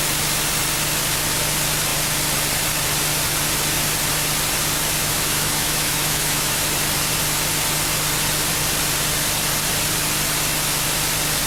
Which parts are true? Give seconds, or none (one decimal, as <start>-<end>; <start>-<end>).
0.0-5.0; 6.6-11.5